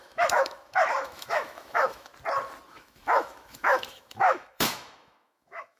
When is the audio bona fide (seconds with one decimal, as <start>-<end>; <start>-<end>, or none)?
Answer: 2.1-2.7